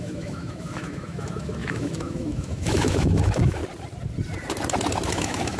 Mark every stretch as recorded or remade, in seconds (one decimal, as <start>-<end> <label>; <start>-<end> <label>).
0.0-3.6 remade; 3.6-5.1 recorded; 5.1-5.6 remade

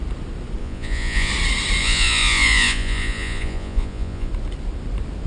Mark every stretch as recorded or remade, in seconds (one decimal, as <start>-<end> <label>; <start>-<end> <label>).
0.0-0.6 recorded; 0.6-1.3 remade; 1.3-1.8 recorded; 1.8-4.3 remade; 4.3-5.3 recorded

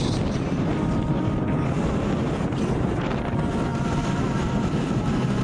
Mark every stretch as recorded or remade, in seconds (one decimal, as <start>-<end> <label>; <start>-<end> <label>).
0.0-5.4 recorded